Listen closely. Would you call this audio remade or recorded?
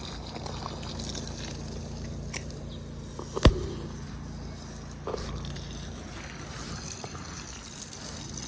recorded